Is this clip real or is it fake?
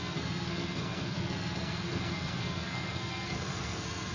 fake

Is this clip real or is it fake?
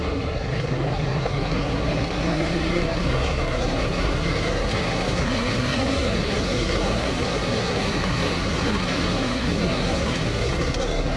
fake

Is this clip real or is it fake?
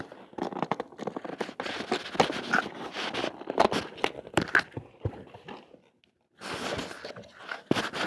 real